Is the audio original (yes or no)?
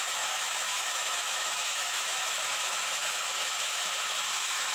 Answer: no